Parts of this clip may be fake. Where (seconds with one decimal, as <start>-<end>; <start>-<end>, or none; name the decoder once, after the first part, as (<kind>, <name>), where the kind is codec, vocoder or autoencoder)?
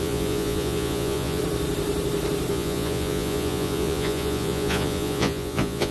0.0-1.4 (vocoder, Vocos); 2.5-5.9